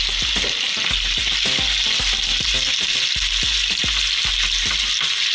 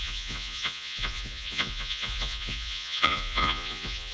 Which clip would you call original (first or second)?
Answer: first